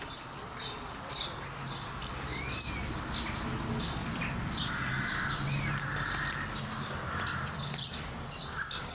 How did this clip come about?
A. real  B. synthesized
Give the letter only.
A